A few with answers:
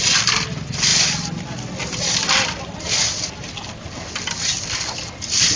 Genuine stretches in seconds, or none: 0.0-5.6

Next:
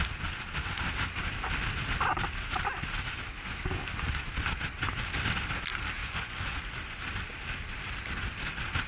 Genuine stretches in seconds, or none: 0.0-6.0; 6.6-8.9

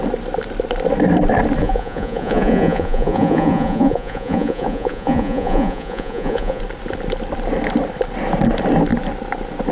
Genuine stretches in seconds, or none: 0.0-1.6; 6.6-9.7

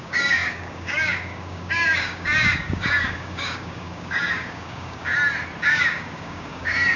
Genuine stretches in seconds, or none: 5.1-5.6